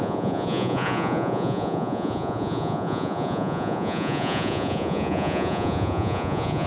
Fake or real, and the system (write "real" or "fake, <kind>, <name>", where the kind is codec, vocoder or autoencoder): fake, vocoder, Vocos